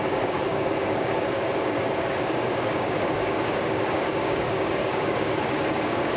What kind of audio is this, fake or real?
fake